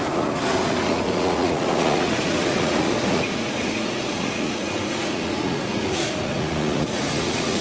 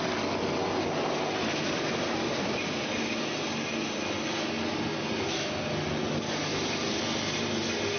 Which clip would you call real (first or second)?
second